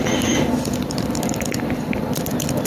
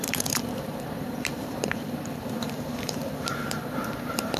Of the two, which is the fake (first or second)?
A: second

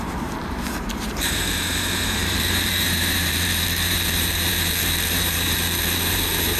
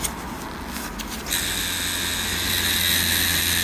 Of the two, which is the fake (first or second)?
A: first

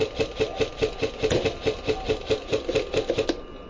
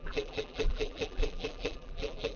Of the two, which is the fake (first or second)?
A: second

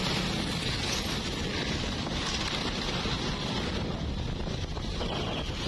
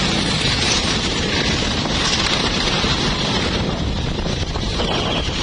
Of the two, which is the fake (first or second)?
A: second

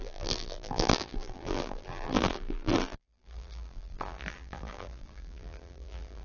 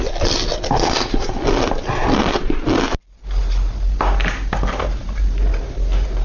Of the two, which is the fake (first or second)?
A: first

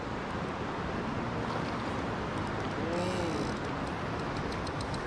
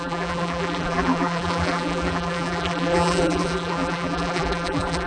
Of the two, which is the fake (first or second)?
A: second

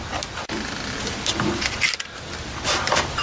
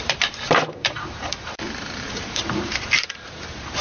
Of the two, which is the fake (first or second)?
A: second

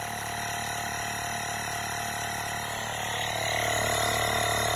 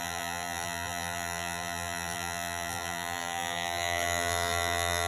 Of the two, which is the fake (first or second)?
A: second